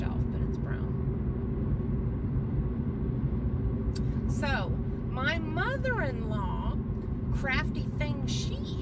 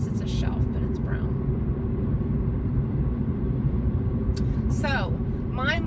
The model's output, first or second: second